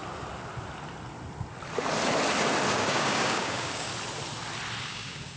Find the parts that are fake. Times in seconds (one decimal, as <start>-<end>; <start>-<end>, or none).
2.7-3.9; 4.8-5.4